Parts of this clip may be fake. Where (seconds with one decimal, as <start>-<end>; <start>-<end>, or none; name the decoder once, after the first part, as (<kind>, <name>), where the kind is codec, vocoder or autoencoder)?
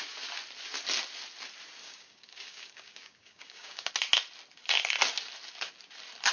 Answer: 1.8-3.9 (codec, DAC)